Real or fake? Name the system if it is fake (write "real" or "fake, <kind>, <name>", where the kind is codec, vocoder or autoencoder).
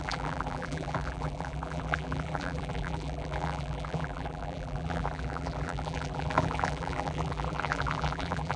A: fake, vocoder, BigVGAN v2